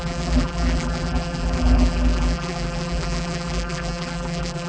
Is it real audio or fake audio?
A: fake